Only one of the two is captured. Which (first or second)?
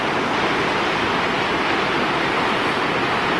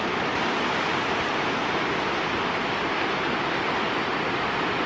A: first